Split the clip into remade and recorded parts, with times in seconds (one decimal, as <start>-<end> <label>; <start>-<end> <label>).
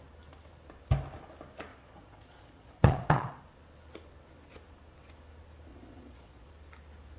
0.0-1.7 recorded; 1.7-3.4 remade; 3.4-5.7 recorded; 5.7-6.5 remade; 6.5-7.2 recorded